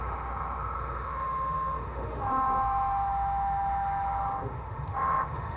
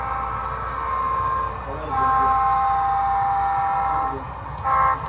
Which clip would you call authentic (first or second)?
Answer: second